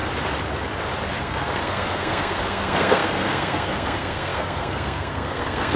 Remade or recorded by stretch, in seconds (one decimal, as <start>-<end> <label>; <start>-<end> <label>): 0.0-1.2 recorded; 1.2-5.8 remade